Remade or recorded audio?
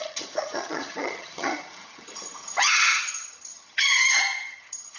remade